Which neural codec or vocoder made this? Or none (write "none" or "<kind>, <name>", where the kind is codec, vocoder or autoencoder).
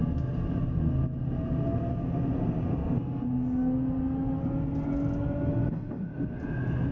none